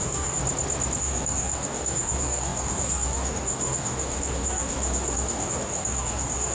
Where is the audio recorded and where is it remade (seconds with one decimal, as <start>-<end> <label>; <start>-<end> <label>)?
0.0-0.4 remade; 0.4-1.0 recorded; 1.0-6.5 remade